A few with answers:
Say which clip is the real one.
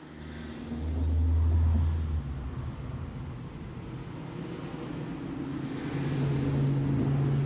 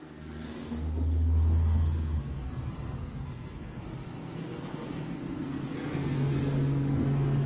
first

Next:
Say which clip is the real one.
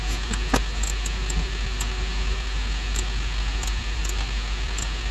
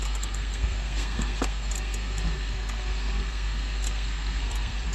first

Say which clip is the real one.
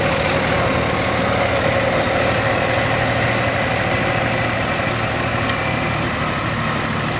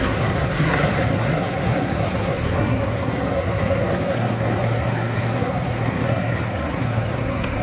first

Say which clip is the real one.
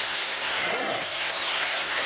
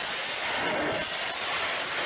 second